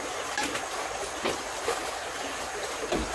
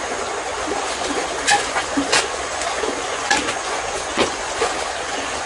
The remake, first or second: second